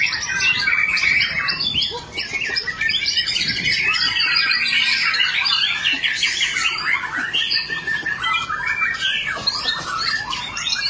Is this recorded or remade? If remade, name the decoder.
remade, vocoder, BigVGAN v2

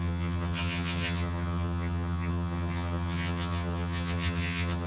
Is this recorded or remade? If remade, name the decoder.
remade, vocoder, HiFi-GAN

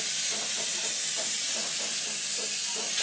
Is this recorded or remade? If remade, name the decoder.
recorded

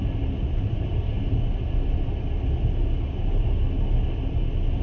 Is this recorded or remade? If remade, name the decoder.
recorded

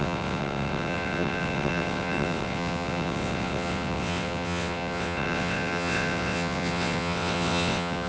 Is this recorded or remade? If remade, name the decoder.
remade, vocoder, WaveNeXt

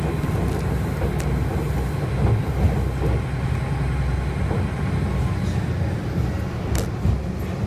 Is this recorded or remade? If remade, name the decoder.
recorded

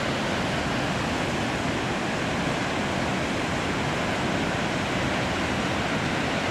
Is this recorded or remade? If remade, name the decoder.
recorded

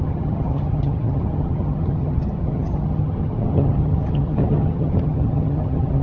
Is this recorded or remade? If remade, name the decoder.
remade, vocoder, HiFi-GAN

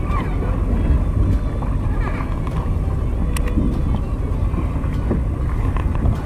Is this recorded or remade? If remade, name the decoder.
recorded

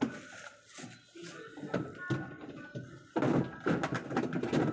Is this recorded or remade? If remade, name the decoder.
recorded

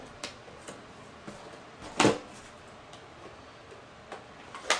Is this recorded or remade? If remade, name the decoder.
recorded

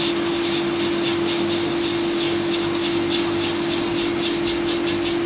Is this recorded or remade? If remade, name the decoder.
recorded